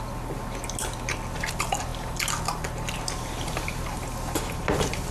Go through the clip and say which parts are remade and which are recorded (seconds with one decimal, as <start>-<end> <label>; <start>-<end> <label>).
0.0-5.1 recorded